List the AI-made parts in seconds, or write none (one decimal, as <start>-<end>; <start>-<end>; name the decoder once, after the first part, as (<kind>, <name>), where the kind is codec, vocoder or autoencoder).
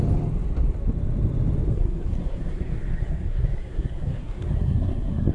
1.7-5.3 (codec, SNAC)